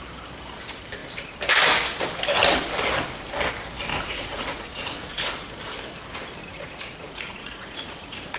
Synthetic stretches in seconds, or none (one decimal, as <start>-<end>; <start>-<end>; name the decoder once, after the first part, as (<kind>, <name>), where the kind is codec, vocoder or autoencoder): 3.9-5.3 (vocoder, Vocos); 6.4-8.4